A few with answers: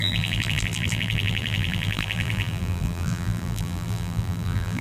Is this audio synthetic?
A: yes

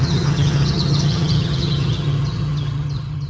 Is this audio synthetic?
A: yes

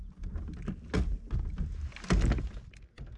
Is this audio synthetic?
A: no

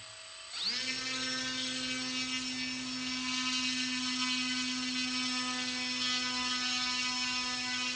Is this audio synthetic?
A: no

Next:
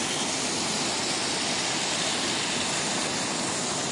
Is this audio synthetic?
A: no